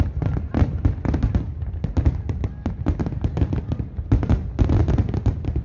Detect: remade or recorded recorded